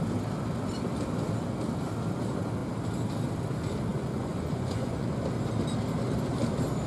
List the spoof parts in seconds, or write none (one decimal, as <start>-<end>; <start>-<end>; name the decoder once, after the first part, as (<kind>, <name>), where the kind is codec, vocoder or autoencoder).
3.9-5.2 (vocoder, Vocos)